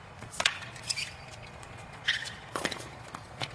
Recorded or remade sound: remade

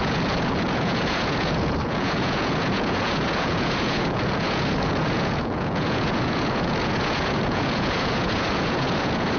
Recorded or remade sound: remade